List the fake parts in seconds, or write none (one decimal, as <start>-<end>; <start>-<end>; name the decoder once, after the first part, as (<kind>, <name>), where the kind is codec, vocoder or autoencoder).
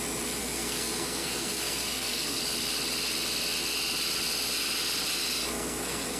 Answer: 0.4-2.4 (codec, SNAC); 5.4-6.2